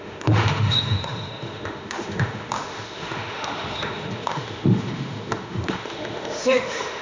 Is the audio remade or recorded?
remade